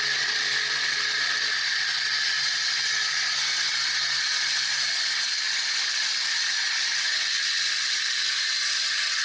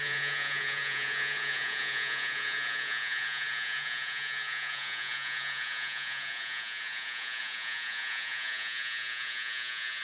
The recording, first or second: first